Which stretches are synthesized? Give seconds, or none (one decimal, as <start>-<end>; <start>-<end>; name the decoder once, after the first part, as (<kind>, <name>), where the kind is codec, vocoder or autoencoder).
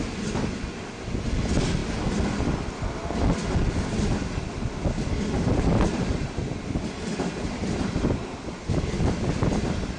none